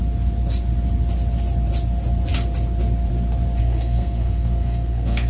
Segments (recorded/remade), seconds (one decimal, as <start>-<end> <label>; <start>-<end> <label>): 0.0-3.6 recorded; 3.6-5.3 remade